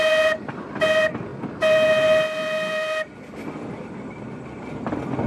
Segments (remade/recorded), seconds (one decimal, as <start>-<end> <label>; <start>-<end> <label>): 0.0-5.3 recorded